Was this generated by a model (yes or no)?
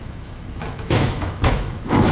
yes